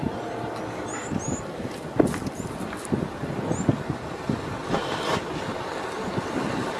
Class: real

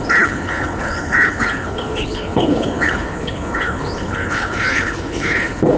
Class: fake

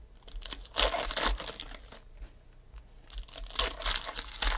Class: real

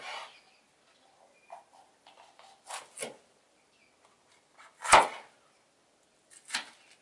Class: real